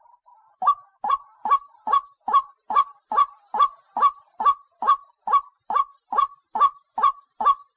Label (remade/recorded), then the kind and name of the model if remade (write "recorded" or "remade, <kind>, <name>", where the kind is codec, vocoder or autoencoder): recorded